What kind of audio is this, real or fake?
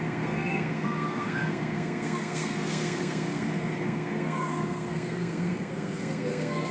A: fake